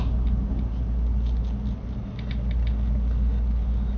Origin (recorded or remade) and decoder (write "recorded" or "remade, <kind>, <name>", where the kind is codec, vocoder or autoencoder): recorded